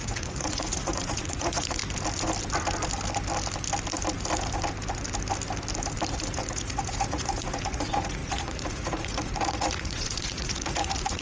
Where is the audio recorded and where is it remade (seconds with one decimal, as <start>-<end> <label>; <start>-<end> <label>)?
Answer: 0.0-1.8 remade; 1.8-6.1 recorded; 6.1-11.2 remade